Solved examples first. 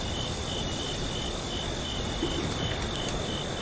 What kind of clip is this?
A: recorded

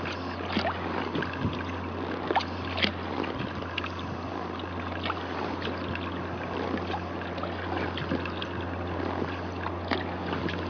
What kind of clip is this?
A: recorded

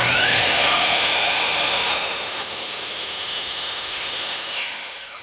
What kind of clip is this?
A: remade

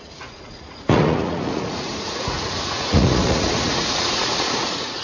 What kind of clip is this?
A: remade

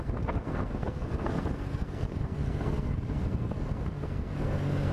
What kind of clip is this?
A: remade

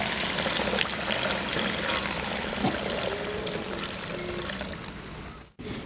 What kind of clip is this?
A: recorded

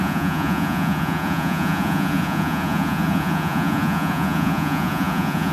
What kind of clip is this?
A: remade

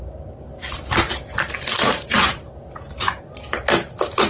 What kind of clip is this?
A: recorded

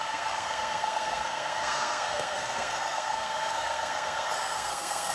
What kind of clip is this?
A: remade